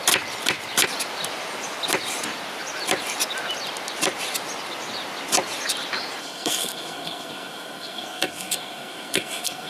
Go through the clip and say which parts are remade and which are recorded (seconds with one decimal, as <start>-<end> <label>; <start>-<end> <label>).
0.0-6.2 recorded; 6.2-9.7 remade